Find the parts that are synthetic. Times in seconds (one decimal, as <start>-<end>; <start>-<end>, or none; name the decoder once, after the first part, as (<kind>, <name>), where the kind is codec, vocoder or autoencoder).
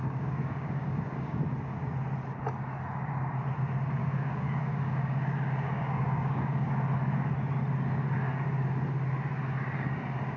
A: 0.0-1.4 (codec, DAC); 4.0-6.7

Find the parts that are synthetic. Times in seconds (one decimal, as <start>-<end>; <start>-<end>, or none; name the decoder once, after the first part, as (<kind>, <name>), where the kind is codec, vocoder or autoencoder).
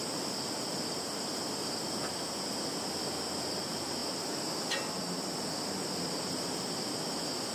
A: none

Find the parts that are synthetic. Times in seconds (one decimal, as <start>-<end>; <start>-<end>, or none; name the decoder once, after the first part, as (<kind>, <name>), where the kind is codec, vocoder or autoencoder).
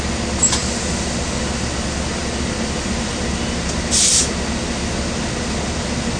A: none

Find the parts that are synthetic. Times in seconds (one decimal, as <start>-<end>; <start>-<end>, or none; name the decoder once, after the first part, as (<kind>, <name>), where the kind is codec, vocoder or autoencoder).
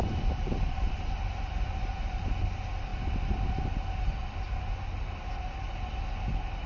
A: none